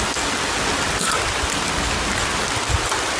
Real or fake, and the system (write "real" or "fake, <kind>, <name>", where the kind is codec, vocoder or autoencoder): real